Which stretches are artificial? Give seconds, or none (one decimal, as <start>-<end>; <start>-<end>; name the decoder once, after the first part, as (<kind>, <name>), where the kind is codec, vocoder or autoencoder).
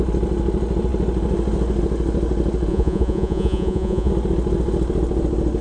2.7-4.1 (vocoder, Vocos)